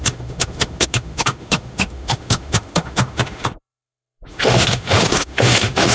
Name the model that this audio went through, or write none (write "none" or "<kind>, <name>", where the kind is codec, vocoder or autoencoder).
autoencoder, DAC-VAE